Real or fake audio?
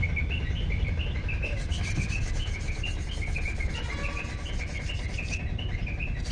real